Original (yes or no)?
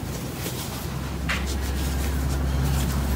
yes